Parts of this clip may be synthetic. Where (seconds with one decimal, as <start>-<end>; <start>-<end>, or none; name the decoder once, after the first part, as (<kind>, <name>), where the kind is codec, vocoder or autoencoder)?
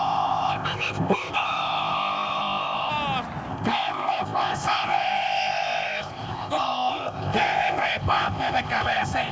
0.0-2.9 (codec, ZipCodec); 3.5-9.3